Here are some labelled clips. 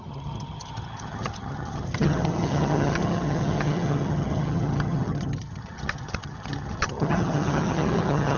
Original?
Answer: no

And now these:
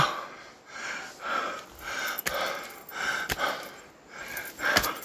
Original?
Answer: yes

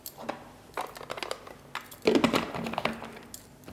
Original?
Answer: yes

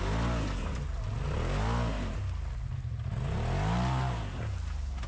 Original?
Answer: yes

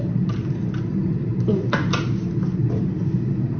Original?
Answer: yes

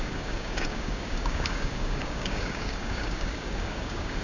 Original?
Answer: no